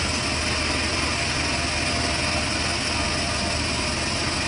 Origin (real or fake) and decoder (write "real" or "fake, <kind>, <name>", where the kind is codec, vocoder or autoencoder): real